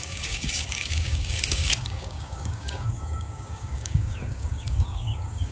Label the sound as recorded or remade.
remade